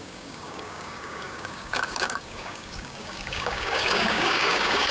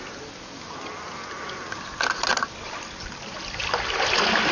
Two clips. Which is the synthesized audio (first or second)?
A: first